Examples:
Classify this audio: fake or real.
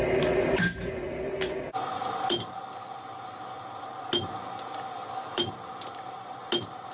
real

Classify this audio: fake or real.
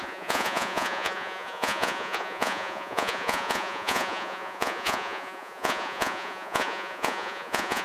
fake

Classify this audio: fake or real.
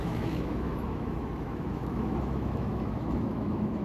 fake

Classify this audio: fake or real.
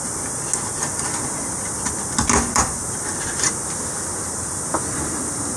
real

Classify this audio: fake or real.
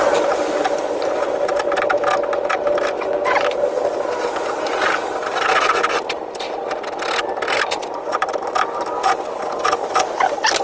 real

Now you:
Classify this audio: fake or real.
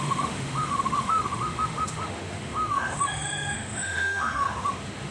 fake